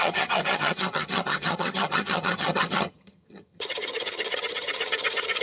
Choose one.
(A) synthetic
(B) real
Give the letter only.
A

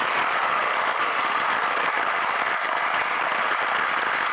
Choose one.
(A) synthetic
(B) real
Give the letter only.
B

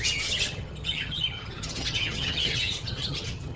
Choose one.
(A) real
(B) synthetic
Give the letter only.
B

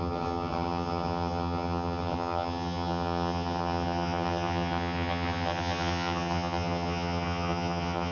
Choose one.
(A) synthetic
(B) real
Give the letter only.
A